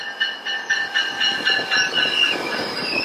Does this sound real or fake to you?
real